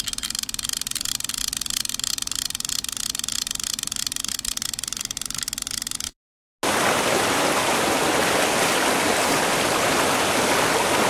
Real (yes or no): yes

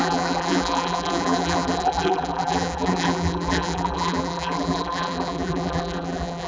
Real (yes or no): no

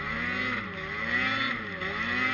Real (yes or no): yes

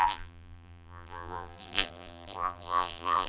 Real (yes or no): no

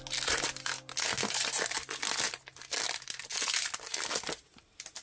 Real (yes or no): yes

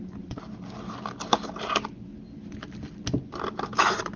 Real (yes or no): yes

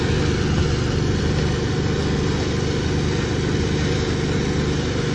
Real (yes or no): yes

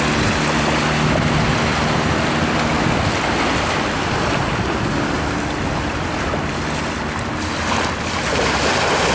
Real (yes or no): yes